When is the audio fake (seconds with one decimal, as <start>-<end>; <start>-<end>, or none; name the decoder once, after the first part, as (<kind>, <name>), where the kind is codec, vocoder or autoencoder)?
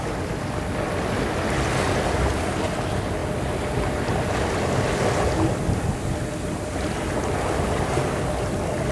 none